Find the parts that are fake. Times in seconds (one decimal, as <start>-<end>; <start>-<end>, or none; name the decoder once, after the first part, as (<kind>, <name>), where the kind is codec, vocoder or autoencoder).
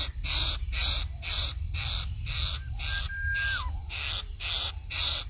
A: none